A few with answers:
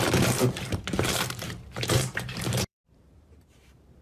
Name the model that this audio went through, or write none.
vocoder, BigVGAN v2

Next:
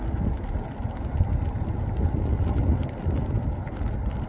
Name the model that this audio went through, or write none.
none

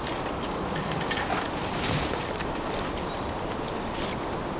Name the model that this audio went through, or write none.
none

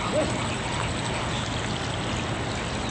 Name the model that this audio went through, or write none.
none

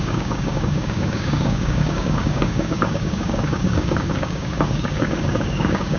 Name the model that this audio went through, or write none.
codec, DAC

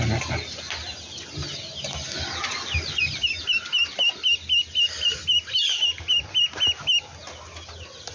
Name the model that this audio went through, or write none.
none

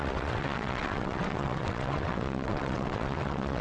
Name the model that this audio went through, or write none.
vocoder, WaveNeXt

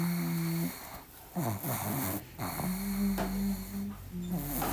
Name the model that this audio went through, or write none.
none